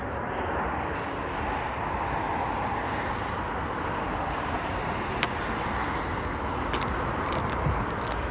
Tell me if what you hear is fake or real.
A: real